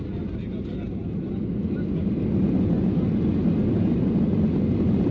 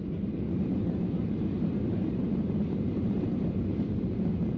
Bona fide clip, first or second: first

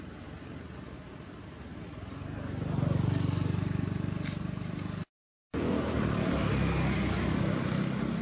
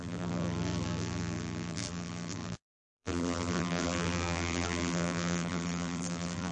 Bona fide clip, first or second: first